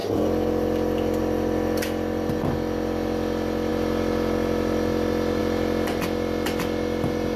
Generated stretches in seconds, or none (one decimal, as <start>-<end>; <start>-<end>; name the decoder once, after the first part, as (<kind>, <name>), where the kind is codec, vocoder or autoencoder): none